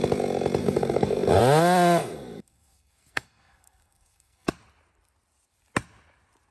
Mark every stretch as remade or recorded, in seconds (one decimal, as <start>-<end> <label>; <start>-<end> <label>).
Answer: 0.0-0.6 recorded; 0.6-1.4 remade; 1.4-2.0 recorded; 2.0-4.5 remade; 4.5-6.5 recorded